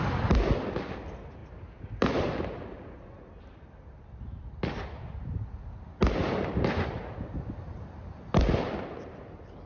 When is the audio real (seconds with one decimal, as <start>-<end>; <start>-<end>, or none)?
0.0-6.2; 7.0-9.7